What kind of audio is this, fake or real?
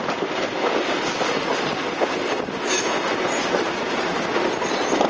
real